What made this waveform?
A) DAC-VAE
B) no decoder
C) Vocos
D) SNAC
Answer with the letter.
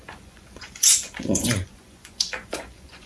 C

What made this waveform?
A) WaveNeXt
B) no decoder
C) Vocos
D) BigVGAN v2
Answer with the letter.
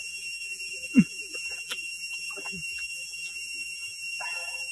D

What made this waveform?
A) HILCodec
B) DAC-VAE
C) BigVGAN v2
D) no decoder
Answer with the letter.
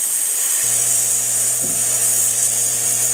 C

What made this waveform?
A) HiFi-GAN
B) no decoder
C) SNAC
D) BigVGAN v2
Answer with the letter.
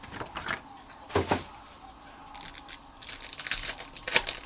B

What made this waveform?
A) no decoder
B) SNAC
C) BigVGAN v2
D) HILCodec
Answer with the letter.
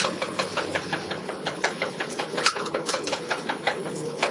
D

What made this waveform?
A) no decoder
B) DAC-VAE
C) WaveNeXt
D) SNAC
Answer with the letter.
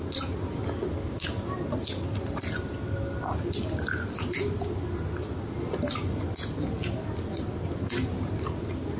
A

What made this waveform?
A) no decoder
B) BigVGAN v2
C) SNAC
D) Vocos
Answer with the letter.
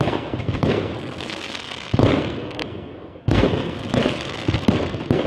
C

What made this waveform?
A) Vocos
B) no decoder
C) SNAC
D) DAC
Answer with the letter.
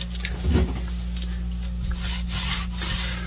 B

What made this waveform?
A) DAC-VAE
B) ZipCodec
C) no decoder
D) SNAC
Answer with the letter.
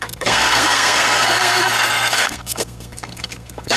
D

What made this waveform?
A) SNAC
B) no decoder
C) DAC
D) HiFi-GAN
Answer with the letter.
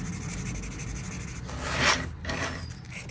B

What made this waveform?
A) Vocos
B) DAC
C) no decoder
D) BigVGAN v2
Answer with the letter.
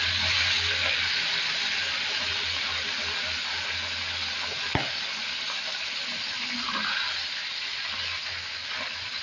C